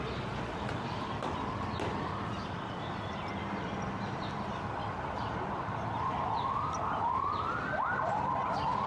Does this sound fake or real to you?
real